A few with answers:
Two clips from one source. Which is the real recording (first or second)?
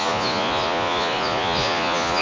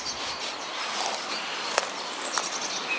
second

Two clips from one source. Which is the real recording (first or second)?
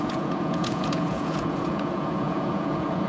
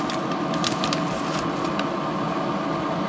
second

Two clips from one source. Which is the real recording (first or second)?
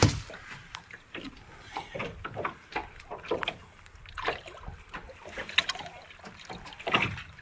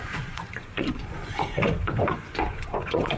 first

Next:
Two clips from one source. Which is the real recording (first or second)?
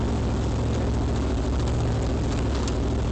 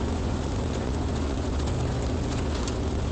first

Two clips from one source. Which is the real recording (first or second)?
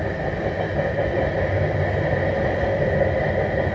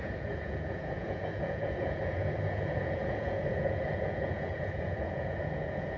first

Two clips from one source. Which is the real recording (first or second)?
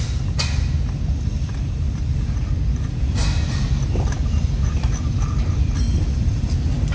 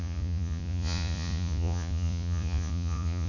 first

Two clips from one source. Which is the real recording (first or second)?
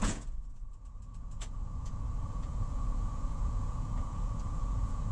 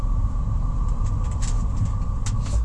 second